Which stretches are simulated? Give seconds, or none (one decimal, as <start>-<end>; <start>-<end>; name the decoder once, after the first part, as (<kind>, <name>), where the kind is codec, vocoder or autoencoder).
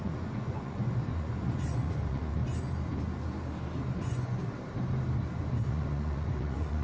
0.0-2.4 (vocoder, Vocos); 4.0-4.4; 5.6-6.8